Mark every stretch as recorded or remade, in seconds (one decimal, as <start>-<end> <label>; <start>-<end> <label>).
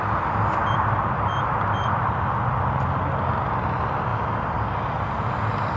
0.0-5.8 recorded